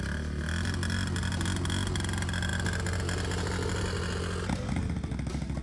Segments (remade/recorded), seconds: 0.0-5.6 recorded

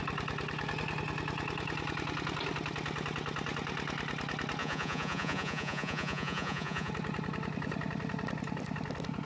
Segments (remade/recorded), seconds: 0.0-4.6 recorded; 4.6-6.9 remade; 6.9-9.3 recorded